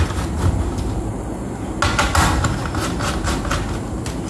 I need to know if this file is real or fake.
real